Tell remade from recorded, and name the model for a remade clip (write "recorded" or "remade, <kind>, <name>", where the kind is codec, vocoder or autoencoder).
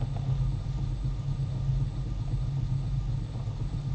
recorded